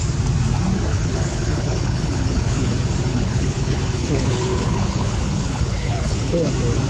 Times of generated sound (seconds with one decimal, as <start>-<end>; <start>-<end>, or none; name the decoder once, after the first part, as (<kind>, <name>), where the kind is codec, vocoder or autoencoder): 0.9-2.7 (codec, HILCodec); 3.1-6.5